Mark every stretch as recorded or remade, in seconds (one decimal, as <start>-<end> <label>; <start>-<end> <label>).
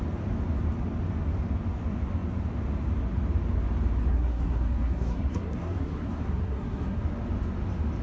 0.0-4.1 recorded; 4.1-7.0 remade; 7.0-8.0 recorded